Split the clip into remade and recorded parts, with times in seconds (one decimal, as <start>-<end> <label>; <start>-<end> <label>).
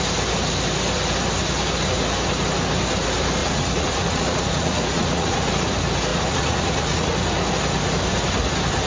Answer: 0.0-3.4 recorded; 3.4-5.5 remade; 5.5-6.1 recorded; 6.1-7.1 remade; 7.1-8.9 recorded